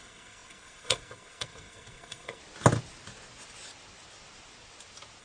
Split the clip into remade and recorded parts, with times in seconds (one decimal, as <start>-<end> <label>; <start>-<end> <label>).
0.0-2.4 remade; 2.4-5.2 recorded